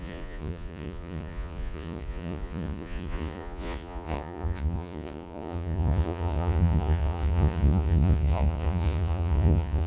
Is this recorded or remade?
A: remade